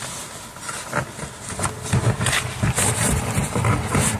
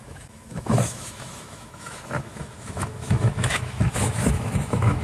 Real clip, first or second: first